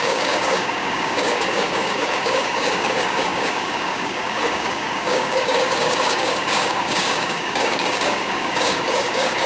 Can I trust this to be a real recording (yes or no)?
no